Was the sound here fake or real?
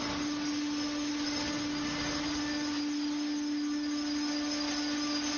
real